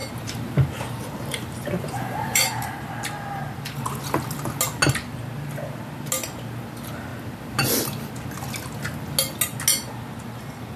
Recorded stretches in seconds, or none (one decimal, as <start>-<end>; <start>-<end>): 2.9-10.8